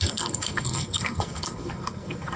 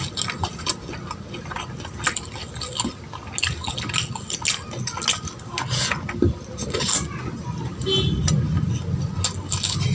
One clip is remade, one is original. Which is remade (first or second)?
first